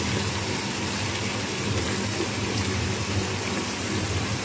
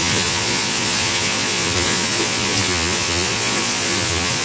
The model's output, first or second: second